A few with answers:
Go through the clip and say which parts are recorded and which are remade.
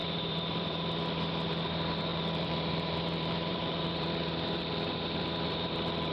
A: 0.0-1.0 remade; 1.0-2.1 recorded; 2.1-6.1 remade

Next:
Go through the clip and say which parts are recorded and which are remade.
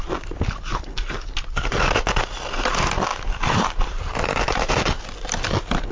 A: 0.0-3.1 recorded; 3.1-4.7 remade; 4.7-5.9 recorded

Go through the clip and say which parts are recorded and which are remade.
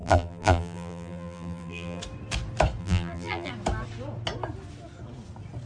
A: 0.0-2.0 remade; 2.0-2.8 recorded; 2.8-3.5 remade; 3.5-5.7 recorded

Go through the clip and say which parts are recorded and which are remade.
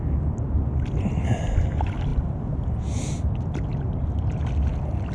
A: 0.0-5.1 recorded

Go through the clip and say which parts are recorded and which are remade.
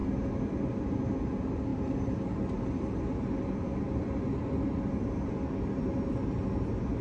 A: 0.0-1.7 recorded; 1.7-5.8 remade; 5.8-7.0 recorded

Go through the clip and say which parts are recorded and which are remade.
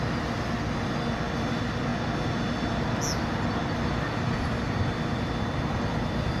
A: 0.0-6.4 recorded